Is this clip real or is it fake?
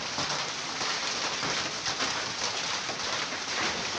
real